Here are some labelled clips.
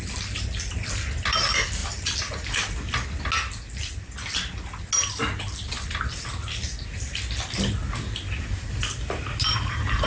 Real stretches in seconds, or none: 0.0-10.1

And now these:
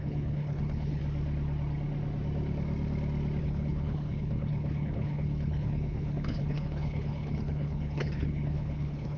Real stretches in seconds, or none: 1.0-3.4

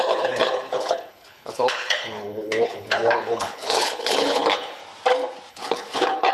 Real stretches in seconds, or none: 4.8-5.5

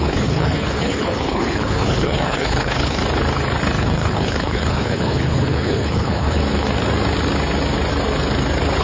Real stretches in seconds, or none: 3.0-3.8; 6.4-8.8

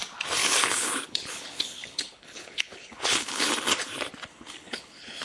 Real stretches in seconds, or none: 0.0-0.4; 3.5-4.3

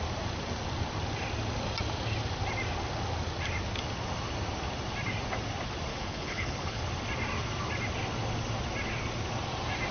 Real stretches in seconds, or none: 0.0-5.9; 6.8-9.9

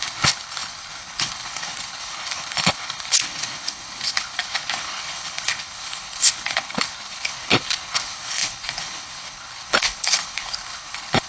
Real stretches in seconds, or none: none

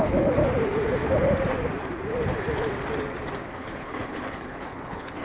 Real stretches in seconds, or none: 0.4-3.5